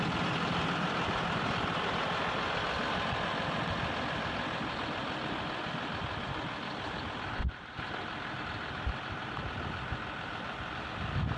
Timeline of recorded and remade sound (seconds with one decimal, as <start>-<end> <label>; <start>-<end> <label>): 0.0-11.4 recorded